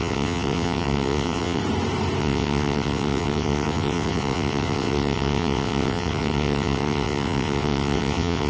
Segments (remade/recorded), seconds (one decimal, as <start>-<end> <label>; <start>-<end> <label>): 0.0-1.6 remade; 1.6-2.2 recorded; 2.2-8.5 remade